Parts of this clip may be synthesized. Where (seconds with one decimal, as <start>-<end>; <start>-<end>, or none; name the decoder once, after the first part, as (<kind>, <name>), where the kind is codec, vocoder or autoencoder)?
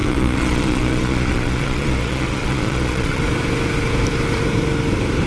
0.0-3.2 (vocoder, Vocos)